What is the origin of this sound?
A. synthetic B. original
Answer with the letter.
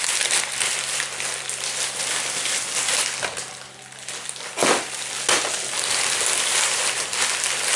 B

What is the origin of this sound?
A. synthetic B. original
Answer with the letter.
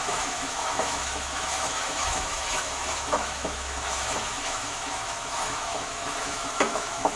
A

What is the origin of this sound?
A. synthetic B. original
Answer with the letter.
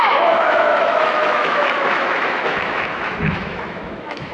A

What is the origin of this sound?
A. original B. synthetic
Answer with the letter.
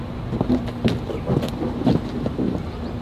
A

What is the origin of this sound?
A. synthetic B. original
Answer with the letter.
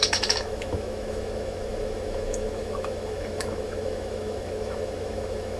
A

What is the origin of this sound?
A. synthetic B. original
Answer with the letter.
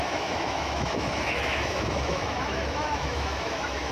A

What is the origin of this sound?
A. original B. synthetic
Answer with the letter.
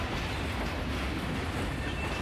A